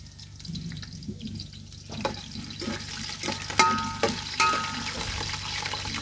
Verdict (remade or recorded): recorded